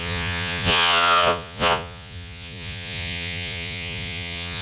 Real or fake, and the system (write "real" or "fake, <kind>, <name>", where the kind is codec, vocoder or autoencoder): fake, vocoder, Vocos